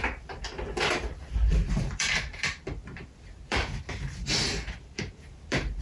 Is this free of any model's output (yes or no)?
no